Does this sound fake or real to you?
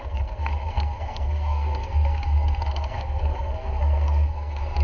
fake